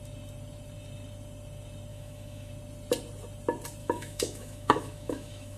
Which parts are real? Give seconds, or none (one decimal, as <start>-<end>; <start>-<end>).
0.0-1.9; 2.5-3.8